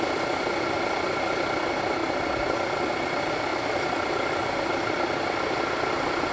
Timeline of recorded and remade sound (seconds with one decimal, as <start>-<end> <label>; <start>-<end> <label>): 0.0-2.0 recorded; 2.0-3.1 remade; 3.1-3.5 recorded; 3.5-4.7 remade; 4.7-6.3 recorded